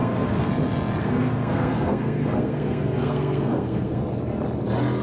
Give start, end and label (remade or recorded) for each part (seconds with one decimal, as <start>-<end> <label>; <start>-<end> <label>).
0.0-0.5 remade; 0.5-1.0 recorded; 1.0-4.0 remade; 4.0-5.0 recorded